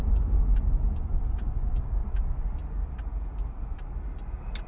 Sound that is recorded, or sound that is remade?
recorded